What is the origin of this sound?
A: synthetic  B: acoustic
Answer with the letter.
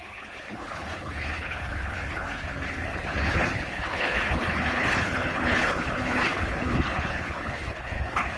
A